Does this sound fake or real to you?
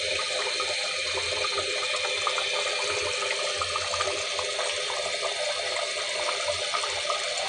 real